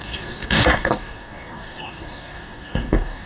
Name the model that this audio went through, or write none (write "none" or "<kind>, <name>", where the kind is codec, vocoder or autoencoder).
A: codec, DAC